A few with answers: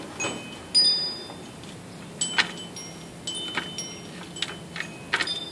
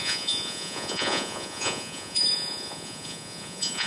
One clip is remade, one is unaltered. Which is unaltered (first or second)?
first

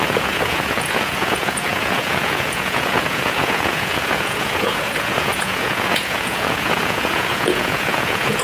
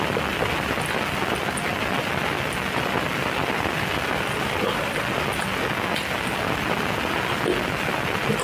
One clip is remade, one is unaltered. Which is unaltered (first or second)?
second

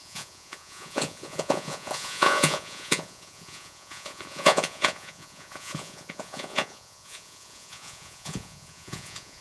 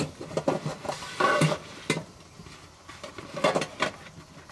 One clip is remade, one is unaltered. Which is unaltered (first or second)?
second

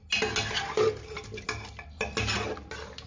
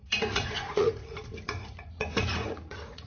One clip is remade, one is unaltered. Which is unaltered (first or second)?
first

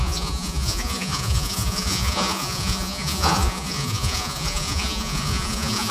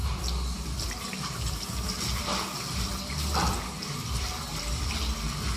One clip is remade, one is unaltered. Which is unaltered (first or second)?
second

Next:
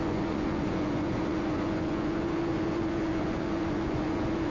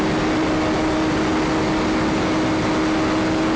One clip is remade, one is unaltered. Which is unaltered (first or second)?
second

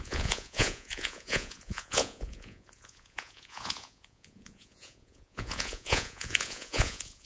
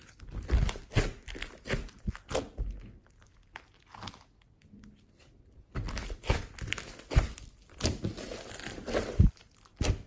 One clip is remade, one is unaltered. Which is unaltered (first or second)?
second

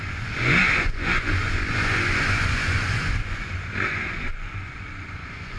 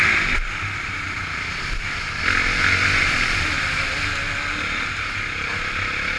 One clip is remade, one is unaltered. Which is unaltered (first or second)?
second